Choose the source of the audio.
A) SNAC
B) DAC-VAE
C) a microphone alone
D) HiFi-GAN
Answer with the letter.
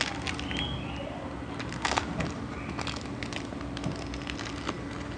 C